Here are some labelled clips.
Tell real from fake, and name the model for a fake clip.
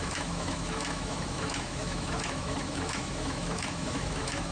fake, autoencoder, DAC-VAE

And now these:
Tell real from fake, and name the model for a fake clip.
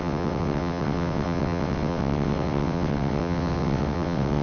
fake, vocoder, WaveNeXt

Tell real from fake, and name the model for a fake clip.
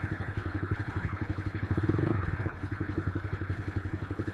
fake, codec, HILCodec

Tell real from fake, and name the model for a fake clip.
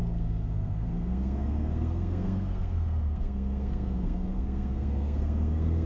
fake, codec, SNAC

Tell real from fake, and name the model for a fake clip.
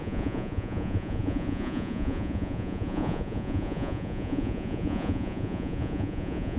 fake, vocoder, Vocos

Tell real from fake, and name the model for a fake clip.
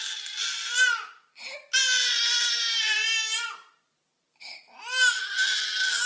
real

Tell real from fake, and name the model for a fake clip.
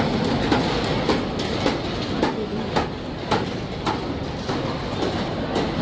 real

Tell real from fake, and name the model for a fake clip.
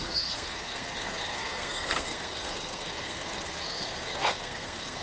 fake, codec, SNAC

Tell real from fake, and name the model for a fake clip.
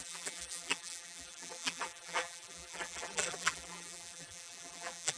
fake, vocoder, BigVGAN v2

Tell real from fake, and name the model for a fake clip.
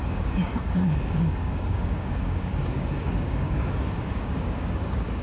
fake, codec, DAC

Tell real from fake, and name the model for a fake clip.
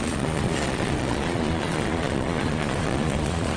fake, vocoder, Vocos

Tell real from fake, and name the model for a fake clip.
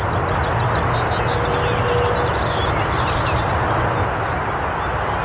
real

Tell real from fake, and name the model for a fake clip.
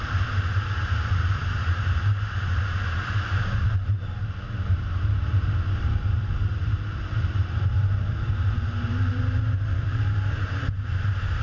fake, vocoder, BigVGAN v2